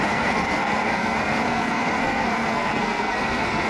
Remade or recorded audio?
remade